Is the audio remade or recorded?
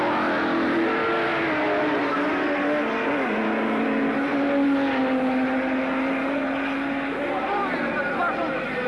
recorded